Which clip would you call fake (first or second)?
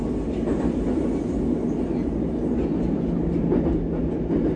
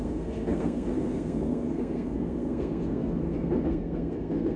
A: second